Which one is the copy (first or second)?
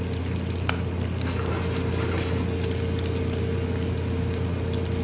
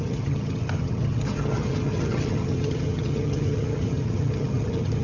second